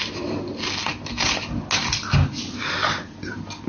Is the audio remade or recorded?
recorded